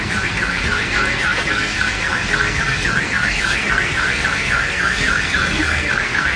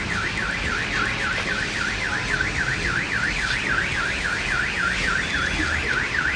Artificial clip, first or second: first